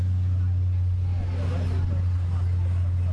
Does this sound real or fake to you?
real